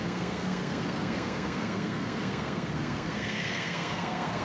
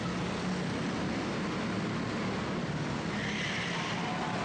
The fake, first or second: first